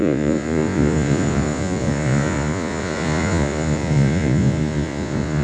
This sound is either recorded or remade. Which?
remade